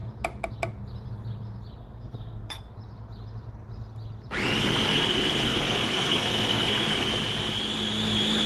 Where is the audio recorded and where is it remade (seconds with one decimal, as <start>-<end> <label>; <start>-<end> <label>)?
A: 0.0-1.8 recorded; 1.8-2.6 remade; 2.6-4.9 recorded; 4.9-7.0 remade; 7.0-8.5 recorded